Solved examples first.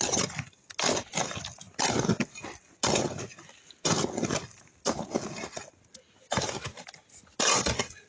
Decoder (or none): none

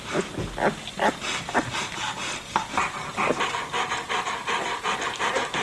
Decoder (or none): none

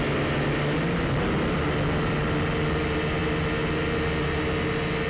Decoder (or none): none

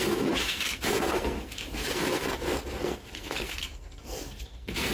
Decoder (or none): codec, SNAC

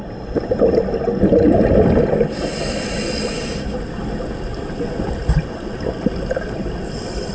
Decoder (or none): none